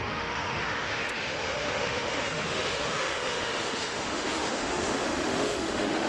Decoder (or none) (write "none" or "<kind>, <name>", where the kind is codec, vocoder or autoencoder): autoencoder, DAC-VAE